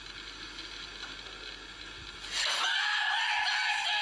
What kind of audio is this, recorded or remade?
recorded